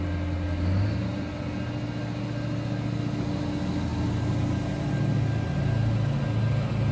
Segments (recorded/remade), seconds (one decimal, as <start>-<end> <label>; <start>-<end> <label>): 0.0-6.9 recorded